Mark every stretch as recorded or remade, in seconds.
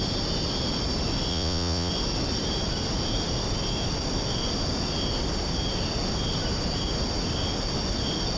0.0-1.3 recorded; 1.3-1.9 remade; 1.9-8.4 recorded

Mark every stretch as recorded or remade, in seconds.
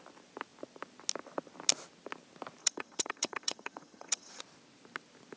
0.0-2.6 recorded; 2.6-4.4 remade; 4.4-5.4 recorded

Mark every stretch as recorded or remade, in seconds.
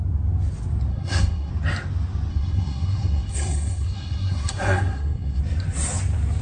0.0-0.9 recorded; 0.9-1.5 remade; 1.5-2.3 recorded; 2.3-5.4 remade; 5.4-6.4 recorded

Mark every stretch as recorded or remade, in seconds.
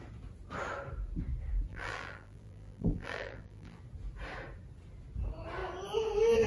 0.0-1.7 recorded; 1.7-3.8 remade; 3.8-6.5 recorded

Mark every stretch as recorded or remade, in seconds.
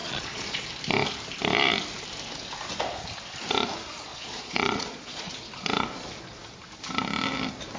0.0-0.6 remade; 0.6-4.1 recorded; 4.1-5.3 remade; 5.3-7.8 recorded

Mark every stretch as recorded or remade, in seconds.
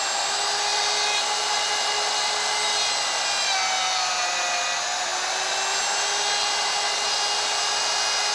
0.0-0.7 recorded; 0.7-2.9 remade; 2.9-8.3 recorded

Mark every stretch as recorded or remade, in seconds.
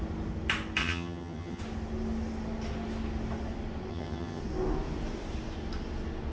0.0-0.8 recorded; 0.8-1.6 remade; 1.6-3.9 recorded; 3.9-4.4 remade; 4.4-6.3 recorded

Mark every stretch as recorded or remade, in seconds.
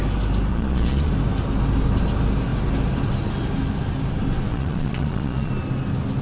0.0-0.5 recorded; 0.5-1.1 remade; 1.1-4.5 recorded; 4.5-5.5 remade; 5.5-6.2 recorded